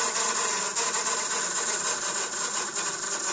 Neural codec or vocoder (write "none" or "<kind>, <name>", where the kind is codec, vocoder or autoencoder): none